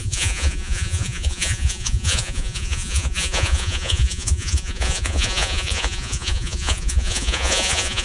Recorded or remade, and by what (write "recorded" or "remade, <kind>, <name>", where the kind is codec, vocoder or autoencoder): remade, vocoder, Vocos